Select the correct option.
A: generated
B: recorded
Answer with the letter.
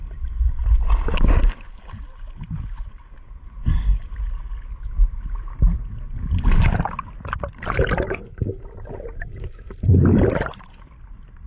B